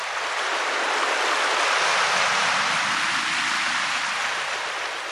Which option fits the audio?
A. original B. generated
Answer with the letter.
A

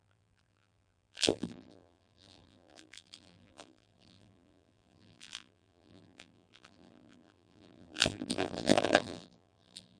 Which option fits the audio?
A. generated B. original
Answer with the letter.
A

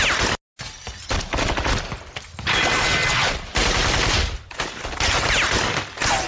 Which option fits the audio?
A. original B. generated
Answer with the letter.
A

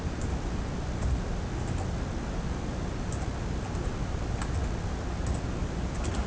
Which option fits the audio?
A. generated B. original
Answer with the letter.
B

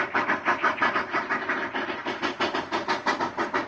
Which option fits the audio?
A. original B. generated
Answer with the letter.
A